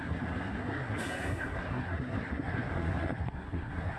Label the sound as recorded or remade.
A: remade